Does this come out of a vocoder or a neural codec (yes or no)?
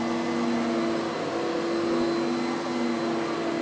no